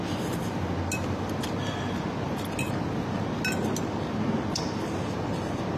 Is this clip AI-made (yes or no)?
no